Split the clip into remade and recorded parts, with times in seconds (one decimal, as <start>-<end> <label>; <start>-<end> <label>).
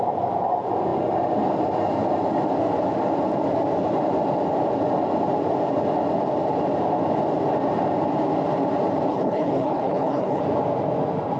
0.0-9.1 recorded; 9.1-10.4 remade; 10.4-11.4 recorded